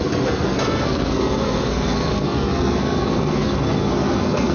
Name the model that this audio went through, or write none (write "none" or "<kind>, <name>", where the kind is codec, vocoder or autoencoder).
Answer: codec, SNAC